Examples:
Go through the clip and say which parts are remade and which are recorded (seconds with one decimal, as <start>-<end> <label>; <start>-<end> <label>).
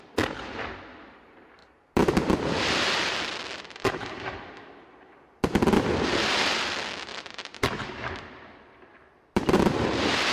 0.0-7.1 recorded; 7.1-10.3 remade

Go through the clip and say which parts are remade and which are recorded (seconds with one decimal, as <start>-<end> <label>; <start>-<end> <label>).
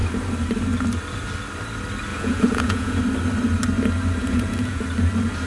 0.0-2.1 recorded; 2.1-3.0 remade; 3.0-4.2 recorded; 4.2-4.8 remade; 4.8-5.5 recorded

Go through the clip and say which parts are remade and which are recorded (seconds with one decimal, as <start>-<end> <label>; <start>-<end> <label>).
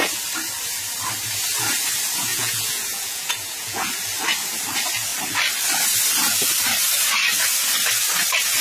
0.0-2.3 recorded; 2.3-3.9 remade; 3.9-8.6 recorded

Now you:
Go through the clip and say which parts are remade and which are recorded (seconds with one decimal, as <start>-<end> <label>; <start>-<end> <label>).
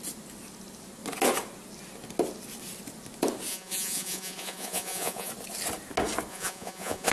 0.0-3.5 recorded; 3.5-5.3 remade; 5.3-6.3 recorded; 6.3-7.1 remade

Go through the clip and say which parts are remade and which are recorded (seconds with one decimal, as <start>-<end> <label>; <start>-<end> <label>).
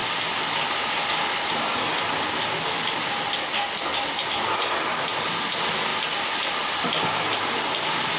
0.0-8.2 recorded